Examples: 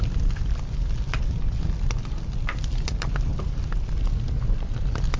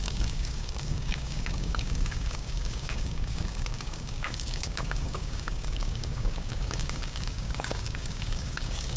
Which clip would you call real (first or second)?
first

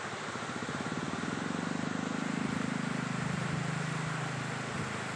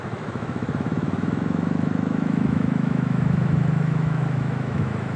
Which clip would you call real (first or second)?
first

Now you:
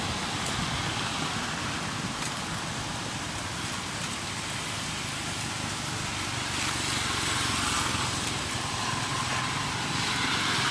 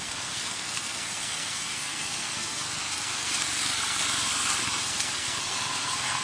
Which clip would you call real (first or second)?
first